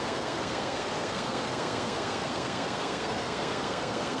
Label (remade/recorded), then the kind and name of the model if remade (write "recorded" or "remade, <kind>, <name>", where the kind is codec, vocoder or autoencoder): remade, codec, SNAC